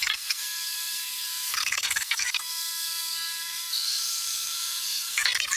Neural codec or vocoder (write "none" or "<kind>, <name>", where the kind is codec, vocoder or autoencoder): codec, SNAC